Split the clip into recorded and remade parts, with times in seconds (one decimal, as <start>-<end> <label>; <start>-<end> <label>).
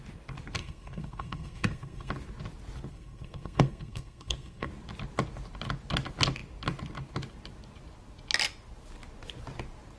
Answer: 0.0-0.6 recorded; 0.6-2.1 remade; 2.1-2.9 recorded; 2.9-4.7 remade; 4.7-10.0 recorded